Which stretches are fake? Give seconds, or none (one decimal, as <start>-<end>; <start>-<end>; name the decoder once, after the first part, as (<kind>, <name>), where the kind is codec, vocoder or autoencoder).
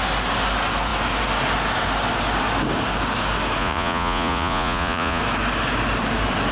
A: 3.6-5.2 (vocoder, Vocos)